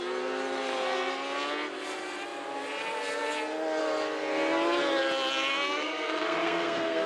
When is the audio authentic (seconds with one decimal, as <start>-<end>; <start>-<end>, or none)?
0.0-5.5